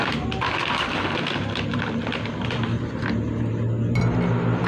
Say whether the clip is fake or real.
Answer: real